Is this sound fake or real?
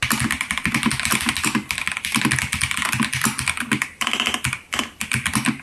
fake